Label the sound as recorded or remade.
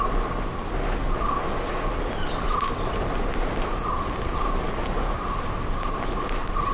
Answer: recorded